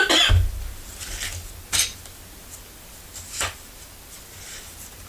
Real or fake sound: real